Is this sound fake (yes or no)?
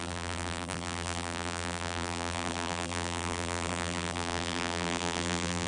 yes